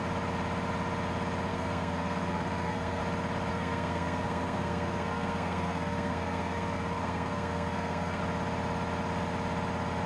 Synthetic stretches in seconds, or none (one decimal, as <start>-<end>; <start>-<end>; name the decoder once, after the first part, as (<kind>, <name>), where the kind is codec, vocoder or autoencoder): 1.5-3.0 (codec, SNAC); 3.5-8.2